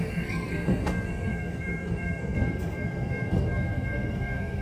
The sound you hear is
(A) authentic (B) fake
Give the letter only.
B